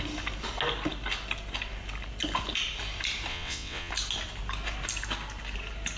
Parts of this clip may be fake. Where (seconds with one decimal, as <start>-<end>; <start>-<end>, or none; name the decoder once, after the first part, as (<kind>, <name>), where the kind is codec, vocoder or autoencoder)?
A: 3.3-3.9 (vocoder, WaveNeXt)